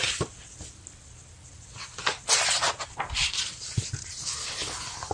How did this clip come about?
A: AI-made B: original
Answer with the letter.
B